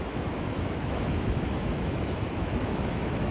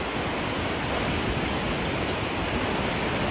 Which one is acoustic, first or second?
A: second